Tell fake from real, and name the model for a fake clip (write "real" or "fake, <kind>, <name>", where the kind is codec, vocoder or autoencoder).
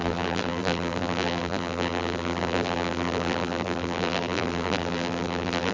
fake, vocoder, BigVGAN v2